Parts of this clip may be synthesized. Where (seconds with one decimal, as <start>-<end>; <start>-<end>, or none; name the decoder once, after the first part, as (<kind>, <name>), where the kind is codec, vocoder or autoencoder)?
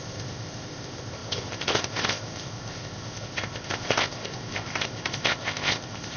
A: 0.0-6.2 (codec, ZipCodec)